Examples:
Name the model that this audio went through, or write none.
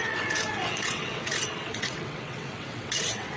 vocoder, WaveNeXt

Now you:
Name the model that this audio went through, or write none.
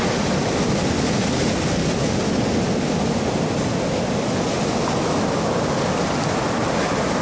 none